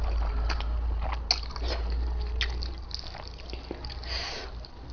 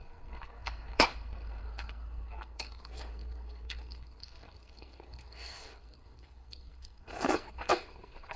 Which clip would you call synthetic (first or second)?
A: second